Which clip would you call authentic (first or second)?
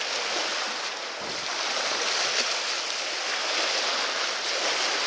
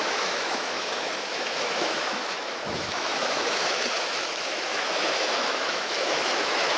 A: first